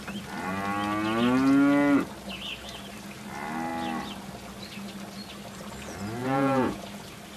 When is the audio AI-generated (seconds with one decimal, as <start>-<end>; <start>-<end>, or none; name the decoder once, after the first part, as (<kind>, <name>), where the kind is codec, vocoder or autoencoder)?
6.2-6.8 (vocoder, Vocos)